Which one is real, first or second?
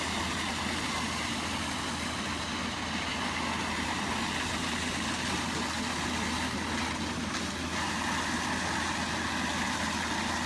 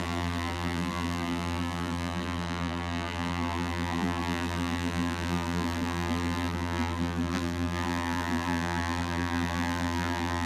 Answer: first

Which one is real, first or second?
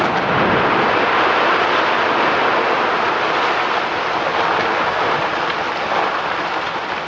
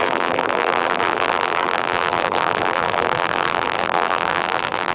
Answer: first